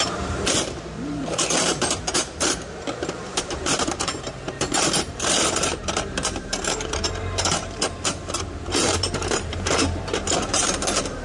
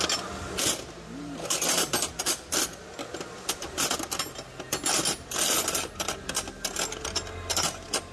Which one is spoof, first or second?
first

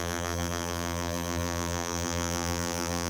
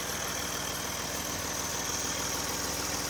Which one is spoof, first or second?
first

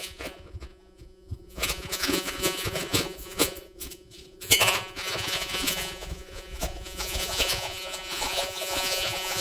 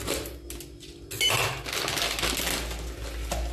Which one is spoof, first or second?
first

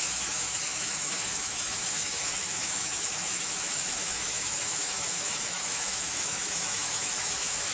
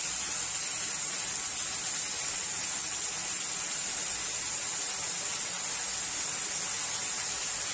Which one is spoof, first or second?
first